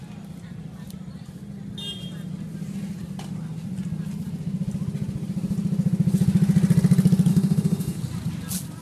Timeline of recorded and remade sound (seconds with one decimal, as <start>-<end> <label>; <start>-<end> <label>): 0.0-7.3 recorded; 7.3-8.0 remade; 8.0-8.8 recorded